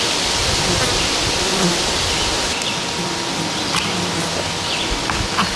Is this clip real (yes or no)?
yes